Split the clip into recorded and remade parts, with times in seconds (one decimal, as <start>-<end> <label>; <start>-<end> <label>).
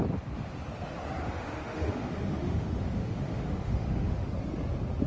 0.0-1.2 recorded; 1.2-4.3 remade; 4.3-5.1 recorded